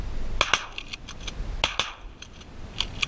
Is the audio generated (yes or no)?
no